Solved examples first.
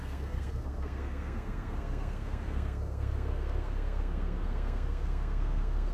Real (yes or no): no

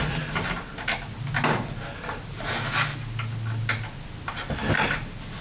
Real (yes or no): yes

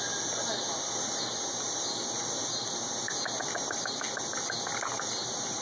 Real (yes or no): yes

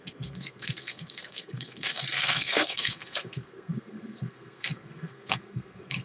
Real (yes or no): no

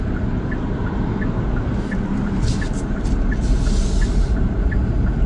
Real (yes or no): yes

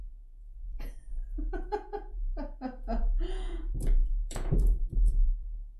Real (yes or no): no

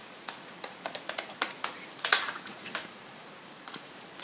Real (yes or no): no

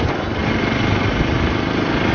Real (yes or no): yes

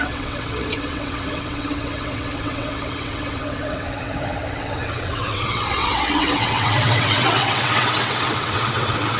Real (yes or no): no